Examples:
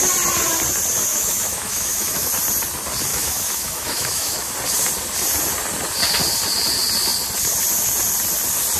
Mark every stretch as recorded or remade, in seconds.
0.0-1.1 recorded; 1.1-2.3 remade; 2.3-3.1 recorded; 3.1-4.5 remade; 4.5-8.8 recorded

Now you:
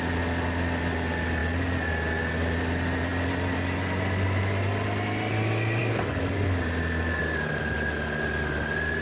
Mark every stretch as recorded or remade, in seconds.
0.0-9.0 recorded

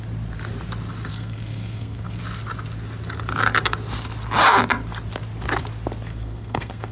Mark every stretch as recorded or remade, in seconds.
0.0-1.1 recorded; 1.1-2.2 remade; 2.2-6.1 recorded; 6.1-6.9 remade

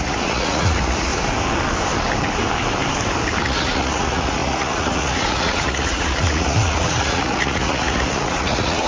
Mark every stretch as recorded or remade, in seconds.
0.0-1.1 remade; 1.1-3.4 recorded; 3.4-8.9 remade